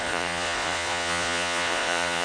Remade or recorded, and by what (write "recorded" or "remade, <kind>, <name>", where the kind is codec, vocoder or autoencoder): remade, vocoder, Vocos